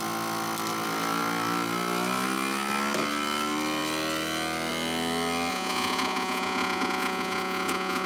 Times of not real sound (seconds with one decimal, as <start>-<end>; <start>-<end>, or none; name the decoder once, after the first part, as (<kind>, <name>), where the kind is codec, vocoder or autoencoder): 5.5-8.1 (vocoder, Vocos)